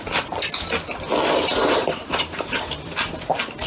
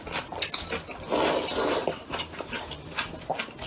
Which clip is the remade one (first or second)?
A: first